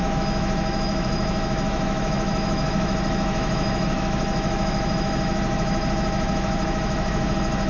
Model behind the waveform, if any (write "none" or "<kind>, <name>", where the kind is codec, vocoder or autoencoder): autoencoder, DAC-VAE